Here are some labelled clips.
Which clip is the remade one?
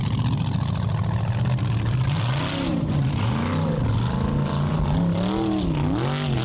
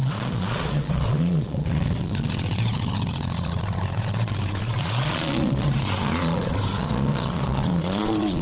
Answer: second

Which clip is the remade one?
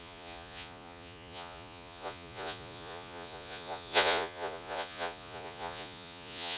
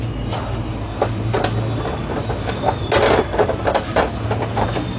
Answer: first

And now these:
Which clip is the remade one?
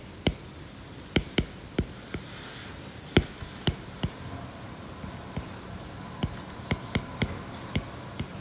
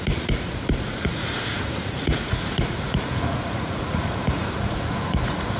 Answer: second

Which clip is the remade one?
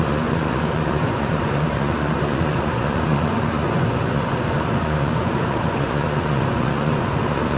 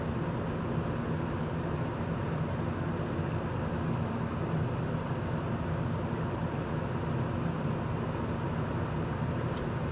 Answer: first